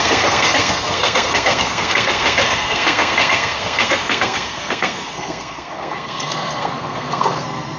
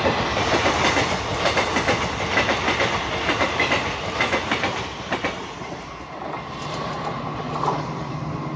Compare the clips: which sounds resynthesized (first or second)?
first